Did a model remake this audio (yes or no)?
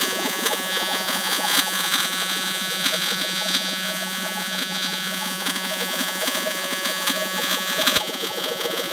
yes